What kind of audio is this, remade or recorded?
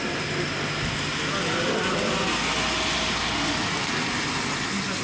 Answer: recorded